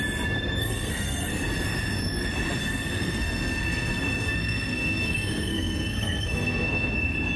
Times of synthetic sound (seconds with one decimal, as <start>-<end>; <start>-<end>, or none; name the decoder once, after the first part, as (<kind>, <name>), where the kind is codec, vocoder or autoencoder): 0.6-1.3 (codec, SNAC); 2.6-6.9